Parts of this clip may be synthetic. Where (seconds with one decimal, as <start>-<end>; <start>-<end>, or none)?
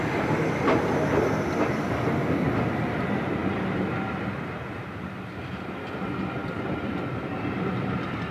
none